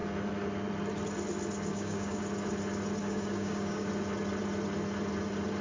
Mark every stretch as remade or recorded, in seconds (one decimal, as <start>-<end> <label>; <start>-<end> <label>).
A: 0.0-1.7 recorded; 1.7-2.2 remade; 2.2-3.0 recorded; 3.0-3.9 remade; 3.9-5.6 recorded